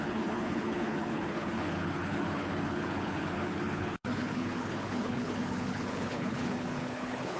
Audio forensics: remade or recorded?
remade